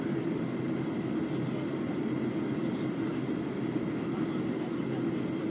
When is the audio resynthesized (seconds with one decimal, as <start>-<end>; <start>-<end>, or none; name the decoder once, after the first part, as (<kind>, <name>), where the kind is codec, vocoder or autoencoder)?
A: 1.7-2.6 (vocoder, BigVGAN v2)